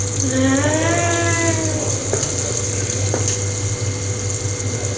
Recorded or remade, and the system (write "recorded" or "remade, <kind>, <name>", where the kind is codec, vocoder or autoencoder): recorded